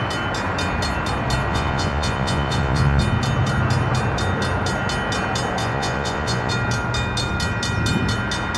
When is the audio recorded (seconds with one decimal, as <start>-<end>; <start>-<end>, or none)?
0.0-1.5; 3.0-5.6; 6.5-8.6